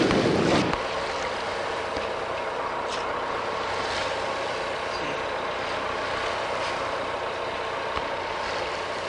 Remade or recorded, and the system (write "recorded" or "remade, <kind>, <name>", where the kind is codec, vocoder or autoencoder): recorded